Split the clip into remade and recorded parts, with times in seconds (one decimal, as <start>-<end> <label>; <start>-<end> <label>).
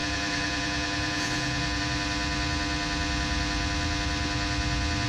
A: 0.0-1.8 remade; 1.8-5.1 recorded